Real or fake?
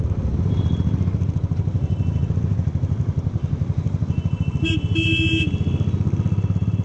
real